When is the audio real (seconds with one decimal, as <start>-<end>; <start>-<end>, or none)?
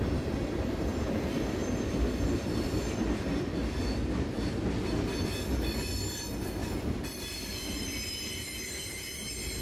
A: 0.0-0.9; 2.8-9.6